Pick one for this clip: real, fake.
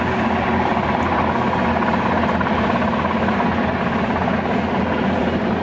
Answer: real